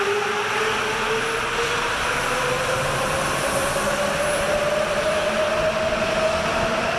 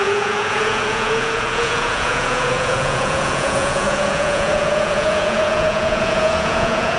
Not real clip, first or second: second